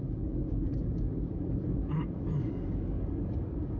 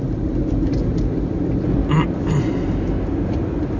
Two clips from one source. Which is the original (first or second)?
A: second